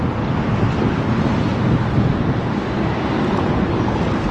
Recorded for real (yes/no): yes